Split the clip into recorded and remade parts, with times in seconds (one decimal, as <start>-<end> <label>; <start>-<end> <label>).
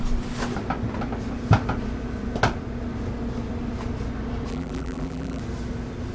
0.0-4.5 recorded; 4.5-5.4 remade; 5.4-6.1 recorded